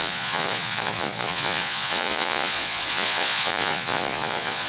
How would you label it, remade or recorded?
remade